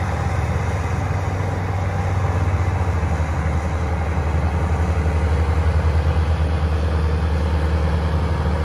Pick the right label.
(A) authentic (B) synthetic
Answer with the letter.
A